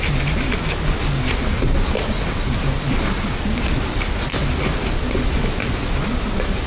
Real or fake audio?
real